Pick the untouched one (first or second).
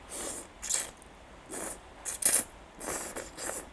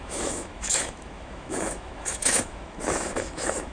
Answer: first